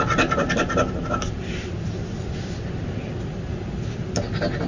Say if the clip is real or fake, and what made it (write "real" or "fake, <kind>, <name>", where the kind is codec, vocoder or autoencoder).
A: real